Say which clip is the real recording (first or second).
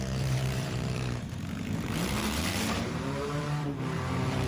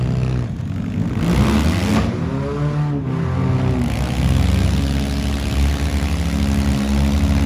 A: second